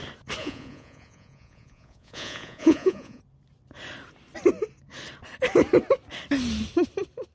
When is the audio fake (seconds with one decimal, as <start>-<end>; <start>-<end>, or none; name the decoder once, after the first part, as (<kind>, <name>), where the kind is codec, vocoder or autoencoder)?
0.4-3.2 (vocoder, Vocos)